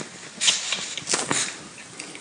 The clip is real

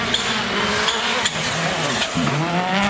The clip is real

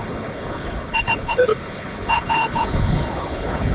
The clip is fake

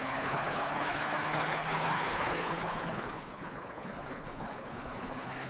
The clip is fake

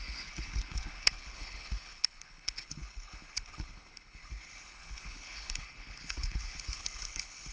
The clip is fake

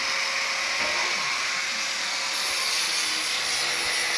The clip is real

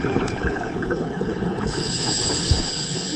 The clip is fake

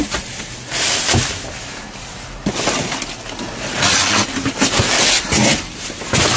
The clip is real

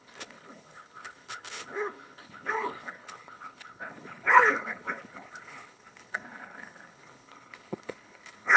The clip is fake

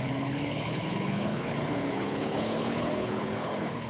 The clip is fake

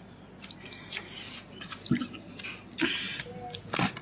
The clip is real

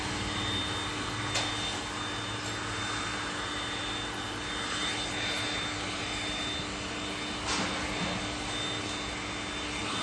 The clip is real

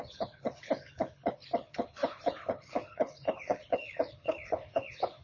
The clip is fake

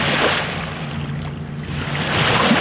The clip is real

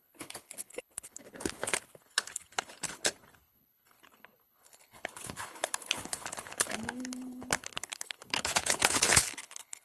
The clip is fake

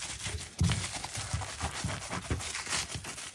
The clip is real